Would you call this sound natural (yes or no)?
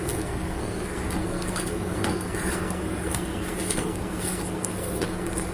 no